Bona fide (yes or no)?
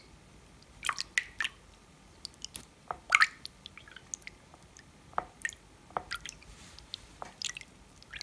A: yes